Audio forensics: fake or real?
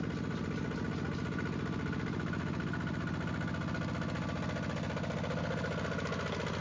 real